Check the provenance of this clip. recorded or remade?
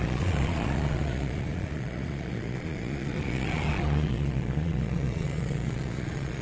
remade